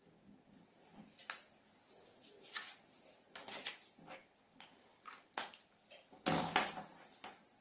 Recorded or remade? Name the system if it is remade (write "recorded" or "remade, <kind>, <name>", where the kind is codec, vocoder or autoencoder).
recorded